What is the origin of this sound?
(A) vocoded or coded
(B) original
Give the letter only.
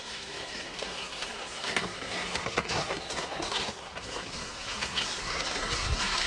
A